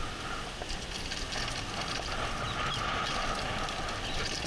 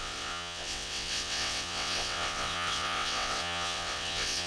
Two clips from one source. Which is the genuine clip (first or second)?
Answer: first